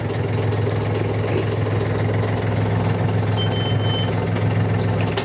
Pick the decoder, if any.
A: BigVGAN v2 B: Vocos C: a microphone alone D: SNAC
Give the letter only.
C